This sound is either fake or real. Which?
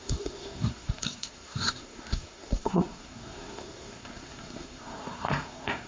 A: fake